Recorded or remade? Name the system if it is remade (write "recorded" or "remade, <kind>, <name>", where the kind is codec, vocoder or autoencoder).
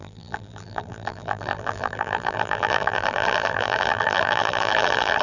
remade, vocoder, BigVGAN v2